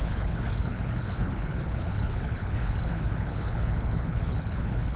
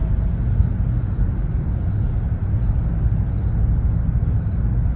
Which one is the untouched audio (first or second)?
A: second